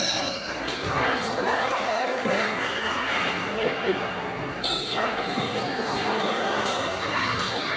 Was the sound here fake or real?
fake